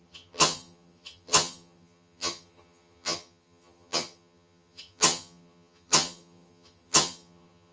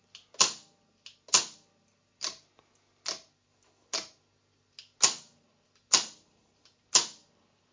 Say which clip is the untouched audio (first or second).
second